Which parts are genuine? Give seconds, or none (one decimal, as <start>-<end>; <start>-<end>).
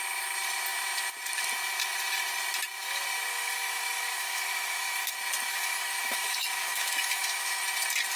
0.0-3.3; 5.1-5.5; 7.6-8.2